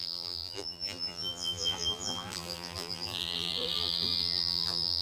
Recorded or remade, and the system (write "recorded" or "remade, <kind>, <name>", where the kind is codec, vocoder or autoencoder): remade, vocoder, BigVGAN v2